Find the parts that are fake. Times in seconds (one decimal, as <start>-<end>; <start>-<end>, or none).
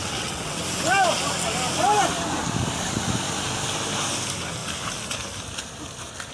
0.0-0.6